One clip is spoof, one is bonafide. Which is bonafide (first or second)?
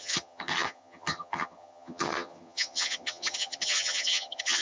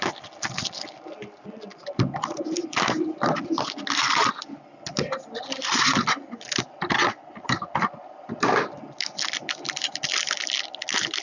second